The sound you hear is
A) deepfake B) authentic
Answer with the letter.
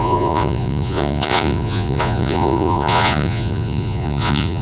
A